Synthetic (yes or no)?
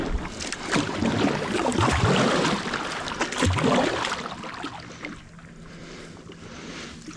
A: no